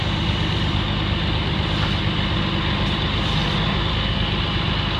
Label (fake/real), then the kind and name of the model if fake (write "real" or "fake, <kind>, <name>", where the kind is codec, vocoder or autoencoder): real